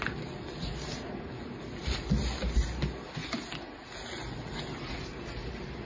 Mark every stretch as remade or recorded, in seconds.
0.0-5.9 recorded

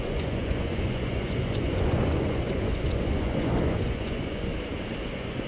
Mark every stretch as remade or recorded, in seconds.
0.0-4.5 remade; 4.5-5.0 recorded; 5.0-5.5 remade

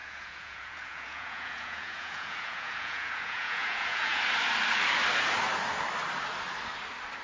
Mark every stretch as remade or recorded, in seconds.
0.0-4.2 remade; 4.2-7.2 recorded